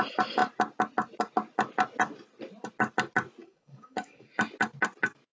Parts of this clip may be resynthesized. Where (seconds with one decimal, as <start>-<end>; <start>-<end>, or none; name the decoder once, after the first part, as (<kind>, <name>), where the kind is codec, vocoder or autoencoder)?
3.4-4.3 (codec, DAC)